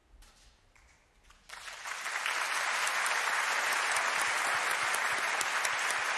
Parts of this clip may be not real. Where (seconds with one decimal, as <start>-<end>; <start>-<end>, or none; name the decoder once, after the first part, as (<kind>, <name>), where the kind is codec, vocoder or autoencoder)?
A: 0.0-3.7 (vocoder, BigVGAN v2)